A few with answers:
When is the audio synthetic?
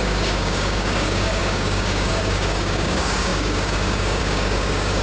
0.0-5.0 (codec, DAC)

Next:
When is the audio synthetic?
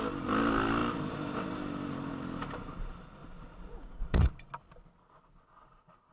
3.2-4.3 (vocoder, Vocos)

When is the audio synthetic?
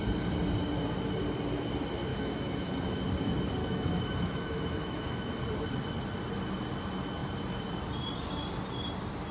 2.1-3.0 (autoencoder, DAC-VAE); 3.6-5.4